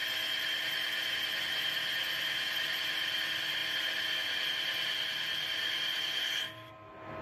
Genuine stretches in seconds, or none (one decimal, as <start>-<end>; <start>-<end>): 0.0-7.2